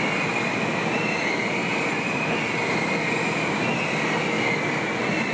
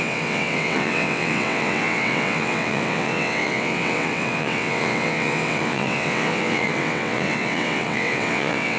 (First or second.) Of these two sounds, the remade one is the second